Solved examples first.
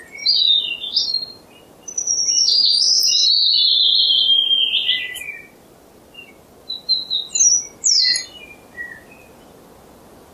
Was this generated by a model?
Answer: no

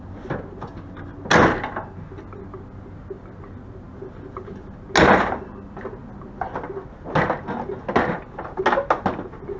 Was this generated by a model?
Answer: no